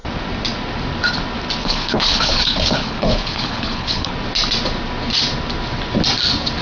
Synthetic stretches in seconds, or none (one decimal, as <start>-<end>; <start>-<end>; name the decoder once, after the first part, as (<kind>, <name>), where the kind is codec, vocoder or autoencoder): 1.6-4.1 (codec, HILCodec)